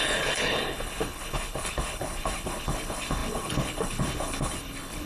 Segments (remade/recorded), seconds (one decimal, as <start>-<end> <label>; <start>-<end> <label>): 0.0-5.1 remade